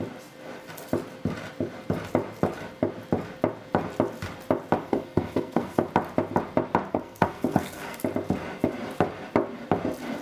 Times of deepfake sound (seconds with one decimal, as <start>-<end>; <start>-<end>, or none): 4.8-5.9; 6.9-8.0